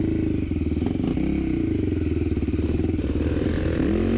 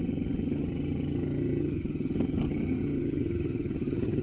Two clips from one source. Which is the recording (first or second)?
first